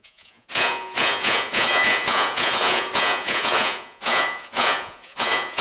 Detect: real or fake fake